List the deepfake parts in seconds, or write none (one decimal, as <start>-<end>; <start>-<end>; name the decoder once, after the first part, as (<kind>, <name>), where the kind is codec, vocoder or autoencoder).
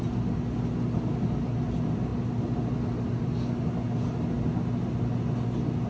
none